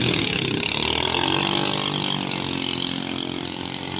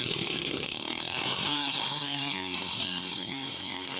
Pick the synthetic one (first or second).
second